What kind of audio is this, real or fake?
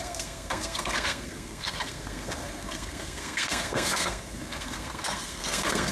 fake